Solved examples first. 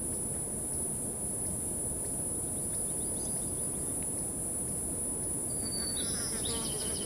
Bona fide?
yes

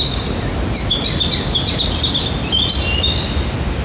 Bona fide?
yes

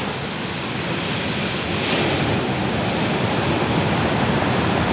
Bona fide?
yes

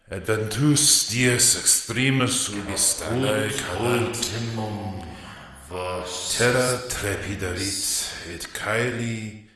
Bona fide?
yes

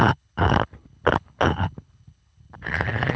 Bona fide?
no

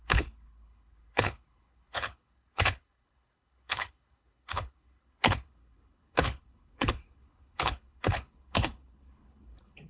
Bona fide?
no